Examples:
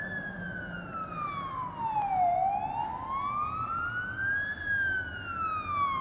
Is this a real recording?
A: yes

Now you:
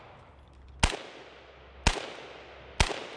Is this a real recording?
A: yes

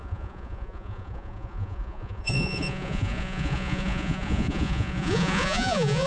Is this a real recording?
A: no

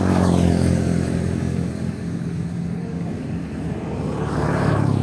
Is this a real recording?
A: no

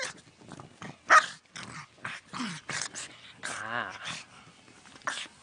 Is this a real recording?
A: yes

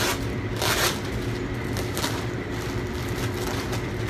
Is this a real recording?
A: yes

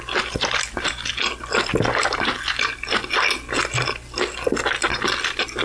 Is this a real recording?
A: yes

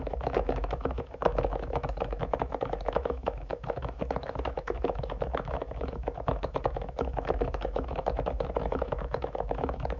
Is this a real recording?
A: no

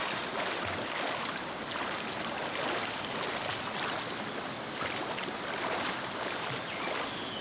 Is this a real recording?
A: yes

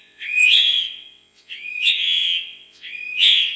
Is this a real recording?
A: no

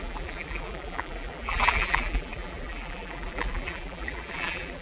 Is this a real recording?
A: no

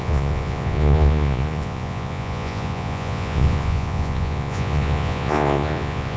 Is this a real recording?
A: no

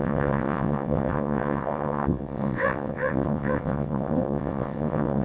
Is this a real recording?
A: no